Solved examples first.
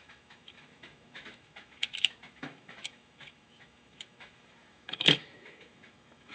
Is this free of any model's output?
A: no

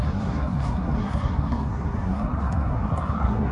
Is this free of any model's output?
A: no